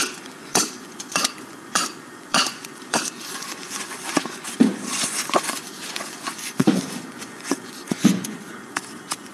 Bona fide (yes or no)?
no